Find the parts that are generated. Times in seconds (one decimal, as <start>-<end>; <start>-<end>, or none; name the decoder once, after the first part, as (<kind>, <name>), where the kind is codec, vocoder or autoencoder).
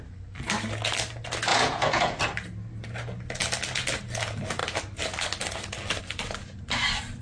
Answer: 1.5-2.2 (vocoder, Vocos)